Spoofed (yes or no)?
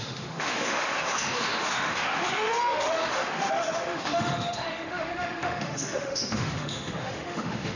yes